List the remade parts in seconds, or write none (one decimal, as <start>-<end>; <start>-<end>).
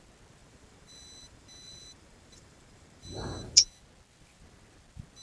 0.4-3.5